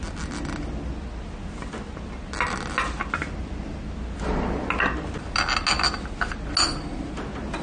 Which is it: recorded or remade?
recorded